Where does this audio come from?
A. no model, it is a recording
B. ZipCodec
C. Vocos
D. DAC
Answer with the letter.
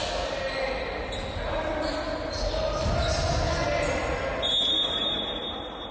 A